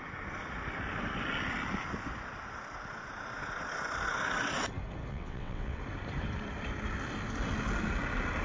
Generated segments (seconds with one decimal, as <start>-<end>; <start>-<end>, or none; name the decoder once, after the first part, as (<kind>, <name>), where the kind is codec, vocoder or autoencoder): 5.1-5.8 (vocoder, WaveNeXt)